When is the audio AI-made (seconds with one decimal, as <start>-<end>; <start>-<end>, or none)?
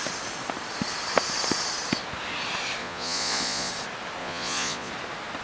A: 2.8-3.7; 4.2-4.9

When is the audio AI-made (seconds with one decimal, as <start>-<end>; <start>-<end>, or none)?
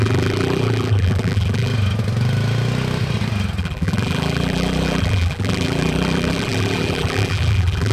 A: 0.0-1.7; 3.6-7.9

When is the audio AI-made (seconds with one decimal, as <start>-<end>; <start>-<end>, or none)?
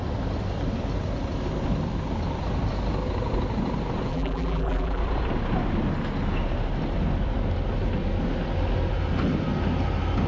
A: 4.1-5.0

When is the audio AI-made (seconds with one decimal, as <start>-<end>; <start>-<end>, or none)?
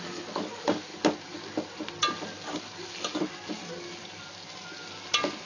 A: none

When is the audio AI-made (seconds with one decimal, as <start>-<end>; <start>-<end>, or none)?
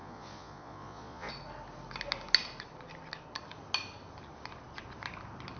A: 0.0-1.3